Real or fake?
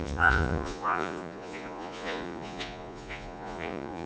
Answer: fake